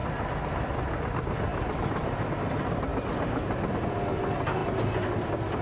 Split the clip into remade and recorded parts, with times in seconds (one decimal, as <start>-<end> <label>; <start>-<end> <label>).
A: 0.0-1.5 recorded; 1.5-2.3 remade; 2.3-5.6 recorded